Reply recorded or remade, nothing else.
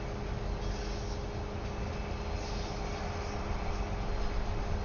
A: recorded